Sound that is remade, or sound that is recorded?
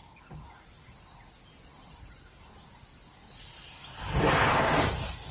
recorded